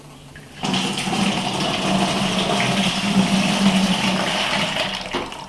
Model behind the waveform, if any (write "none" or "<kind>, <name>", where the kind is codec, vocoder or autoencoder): none